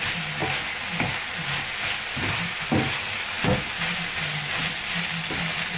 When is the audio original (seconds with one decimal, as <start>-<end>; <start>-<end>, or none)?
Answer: 0.0-5.8